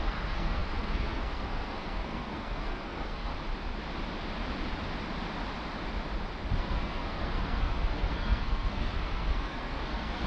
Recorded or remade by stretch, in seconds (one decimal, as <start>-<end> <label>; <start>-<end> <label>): 0.0-3.3 remade; 3.3-6.6 recorded; 6.6-10.3 remade